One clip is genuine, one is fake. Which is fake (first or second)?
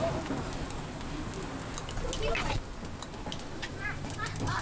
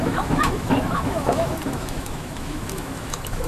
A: second